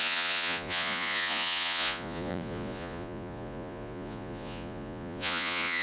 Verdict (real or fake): fake